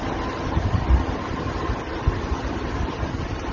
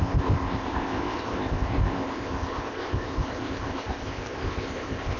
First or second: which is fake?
second